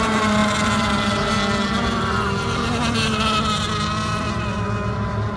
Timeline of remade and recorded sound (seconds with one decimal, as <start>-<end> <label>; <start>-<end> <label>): 0.0-5.4 recorded